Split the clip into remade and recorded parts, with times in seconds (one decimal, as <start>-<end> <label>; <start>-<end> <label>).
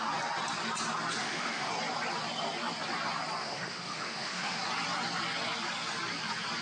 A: 0.0-1.2 recorded; 1.2-1.7 remade; 1.7-3.4 recorded; 3.4-4.6 remade; 4.6-6.6 recorded